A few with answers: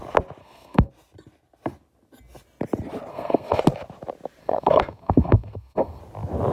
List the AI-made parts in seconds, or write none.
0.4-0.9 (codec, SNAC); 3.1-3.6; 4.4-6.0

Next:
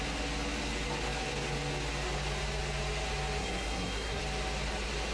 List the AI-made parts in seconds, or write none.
3.4-4.2 (codec, SNAC)

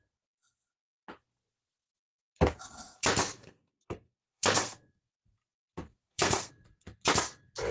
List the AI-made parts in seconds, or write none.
3.4-5.2 (codec, SNAC); 5.9-6.5

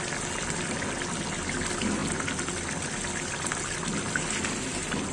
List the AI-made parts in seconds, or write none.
none

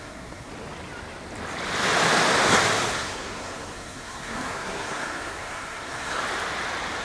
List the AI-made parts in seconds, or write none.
0.0-0.5 (codec, SNAC); 2.9-6.2